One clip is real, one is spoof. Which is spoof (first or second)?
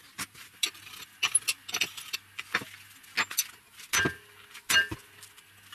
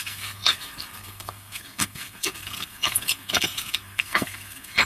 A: second